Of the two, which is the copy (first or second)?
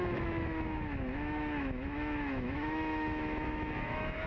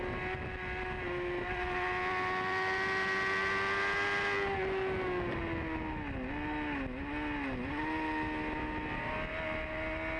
first